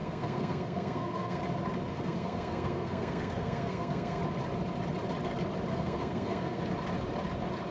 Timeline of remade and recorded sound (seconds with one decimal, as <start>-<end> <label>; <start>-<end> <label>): 0.0-1.4 remade; 1.4-1.9 recorded; 1.9-4.2 remade; 4.2-5.7 recorded; 5.7-6.6 remade; 6.6-7.7 recorded